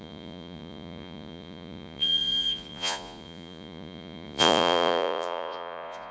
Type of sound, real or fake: fake